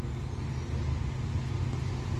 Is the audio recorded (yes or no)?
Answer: yes